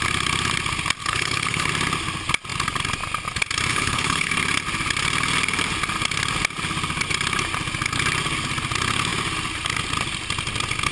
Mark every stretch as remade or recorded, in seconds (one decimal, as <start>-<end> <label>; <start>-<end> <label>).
0.0-1.0 recorded; 1.0-1.7 remade; 1.7-3.7 recorded; 3.7-4.3 remade; 4.3-10.9 recorded